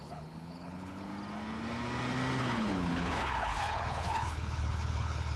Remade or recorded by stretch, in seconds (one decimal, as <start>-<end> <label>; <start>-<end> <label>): 0.0-1.1 remade; 1.1-2.4 recorded; 2.4-5.4 remade